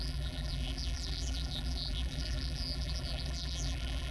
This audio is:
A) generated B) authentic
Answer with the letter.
A